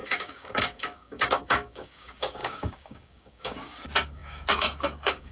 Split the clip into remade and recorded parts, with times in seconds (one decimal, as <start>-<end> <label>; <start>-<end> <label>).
0.0-5.3 remade